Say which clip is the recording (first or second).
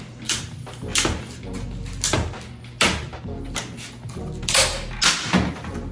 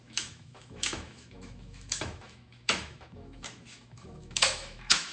first